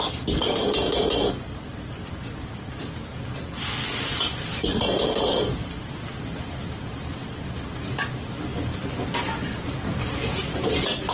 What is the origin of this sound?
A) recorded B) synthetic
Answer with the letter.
A